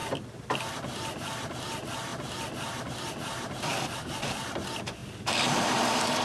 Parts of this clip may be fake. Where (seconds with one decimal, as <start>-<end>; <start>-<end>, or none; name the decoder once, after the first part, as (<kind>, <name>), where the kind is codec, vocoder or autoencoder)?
0.7-3.7 (vocoder, BigVGAN v2); 4.4-6.2